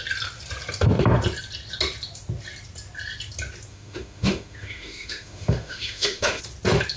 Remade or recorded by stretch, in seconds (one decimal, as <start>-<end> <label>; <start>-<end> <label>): 0.0-3.7 recorded; 3.7-6.4 remade; 6.4-7.0 recorded